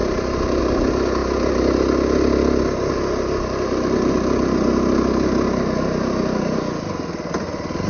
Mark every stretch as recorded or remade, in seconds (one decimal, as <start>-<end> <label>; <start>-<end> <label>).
0.0-0.6 remade; 0.6-7.9 recorded